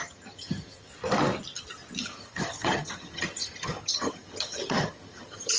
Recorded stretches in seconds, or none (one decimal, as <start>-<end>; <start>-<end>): 0.9-2.0